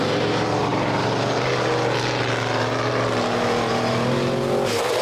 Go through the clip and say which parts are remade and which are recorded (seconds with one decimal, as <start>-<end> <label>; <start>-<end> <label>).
0.0-5.0 recorded

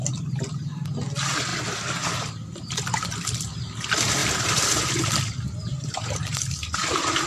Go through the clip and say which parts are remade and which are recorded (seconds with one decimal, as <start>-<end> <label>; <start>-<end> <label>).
0.0-4.2 recorded; 4.2-4.9 remade; 4.9-5.7 recorded; 5.7-7.3 remade

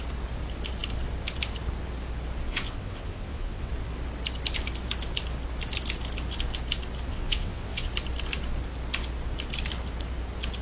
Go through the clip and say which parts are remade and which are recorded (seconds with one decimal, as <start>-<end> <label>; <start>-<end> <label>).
0.0-2.5 recorded; 2.5-3.7 remade; 3.7-7.1 recorded; 7.1-7.9 remade; 7.9-10.6 recorded

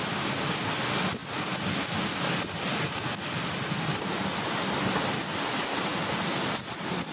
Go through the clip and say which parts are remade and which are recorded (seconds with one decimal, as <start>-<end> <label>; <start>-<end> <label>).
0.0-7.1 recorded

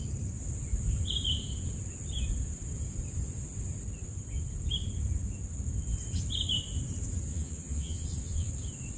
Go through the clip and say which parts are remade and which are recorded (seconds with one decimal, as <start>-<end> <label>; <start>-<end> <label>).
0.0-7.3 recorded; 7.3-8.5 remade; 8.5-9.0 recorded

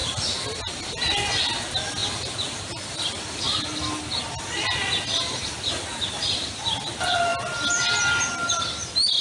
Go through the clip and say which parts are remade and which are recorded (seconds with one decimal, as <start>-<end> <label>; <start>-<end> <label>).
0.0-9.2 recorded